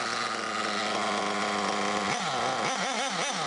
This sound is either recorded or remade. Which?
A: recorded